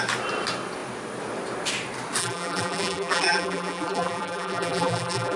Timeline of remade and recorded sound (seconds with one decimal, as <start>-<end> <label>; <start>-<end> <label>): 0.0-2.2 recorded; 2.2-5.4 remade